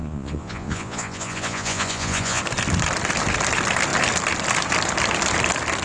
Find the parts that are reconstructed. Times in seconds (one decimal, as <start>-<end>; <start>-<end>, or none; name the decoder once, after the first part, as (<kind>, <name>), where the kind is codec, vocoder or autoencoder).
0.0-2.4 (vocoder, Vocos)